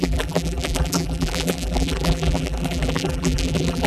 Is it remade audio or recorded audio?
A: remade